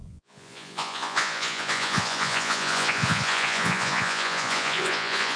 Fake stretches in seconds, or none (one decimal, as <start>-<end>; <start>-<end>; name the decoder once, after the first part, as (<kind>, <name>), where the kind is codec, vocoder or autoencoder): 0.0-5.4 (vocoder, Vocos)